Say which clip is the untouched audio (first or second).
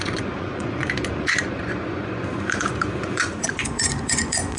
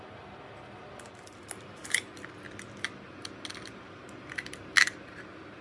second